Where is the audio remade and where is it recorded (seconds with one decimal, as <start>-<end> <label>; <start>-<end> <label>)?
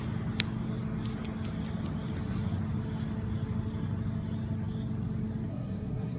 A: 0.0-5.5 recorded; 5.5-6.2 remade